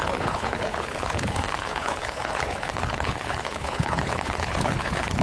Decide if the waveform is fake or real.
fake